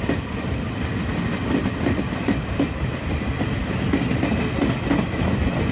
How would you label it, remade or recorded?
recorded